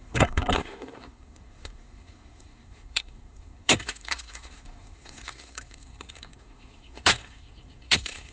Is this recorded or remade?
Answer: remade